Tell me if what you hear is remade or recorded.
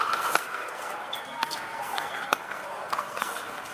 remade